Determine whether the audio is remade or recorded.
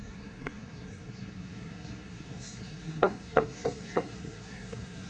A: remade